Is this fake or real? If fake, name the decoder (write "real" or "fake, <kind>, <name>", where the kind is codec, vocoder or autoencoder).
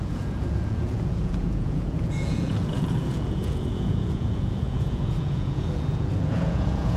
fake, vocoder, Vocos